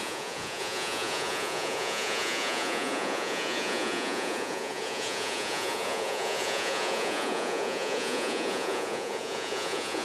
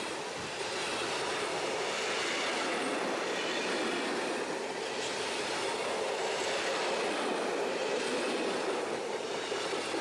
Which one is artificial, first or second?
first